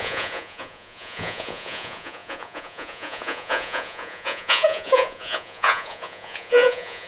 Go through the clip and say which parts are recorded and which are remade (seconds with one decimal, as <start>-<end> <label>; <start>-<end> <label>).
0.0-7.1 remade